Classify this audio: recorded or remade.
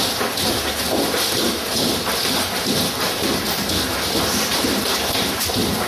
recorded